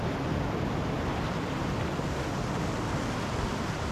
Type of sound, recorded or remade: recorded